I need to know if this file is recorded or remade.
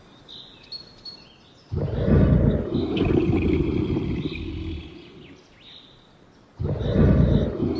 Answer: recorded